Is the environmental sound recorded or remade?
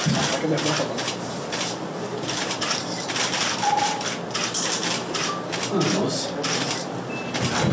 remade